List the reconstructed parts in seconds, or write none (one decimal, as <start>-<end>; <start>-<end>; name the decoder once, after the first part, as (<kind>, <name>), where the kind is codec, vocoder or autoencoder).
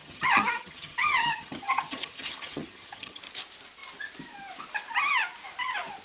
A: 0.0-3.2 (vocoder, HiFi-GAN)